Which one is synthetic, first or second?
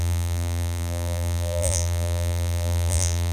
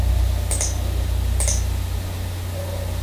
first